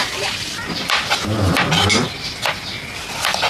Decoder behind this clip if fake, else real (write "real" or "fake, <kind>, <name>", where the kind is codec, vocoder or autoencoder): real